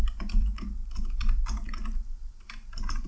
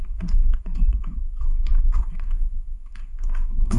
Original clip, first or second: first